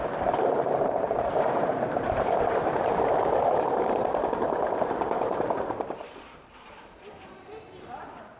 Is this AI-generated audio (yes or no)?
yes